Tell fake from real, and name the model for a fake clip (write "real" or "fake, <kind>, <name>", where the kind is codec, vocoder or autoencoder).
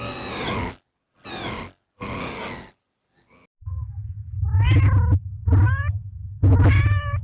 real